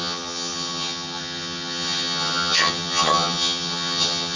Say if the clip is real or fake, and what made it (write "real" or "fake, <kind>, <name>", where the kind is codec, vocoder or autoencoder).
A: fake, vocoder, HiFi-GAN